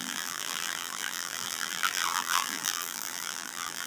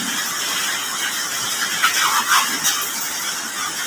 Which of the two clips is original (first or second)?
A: second